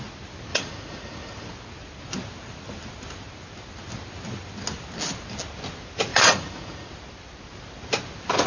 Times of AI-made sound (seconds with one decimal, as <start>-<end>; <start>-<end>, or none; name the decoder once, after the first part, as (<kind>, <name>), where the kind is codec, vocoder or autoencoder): 0.5-1.5 (vocoder, Vocos); 6.1-6.9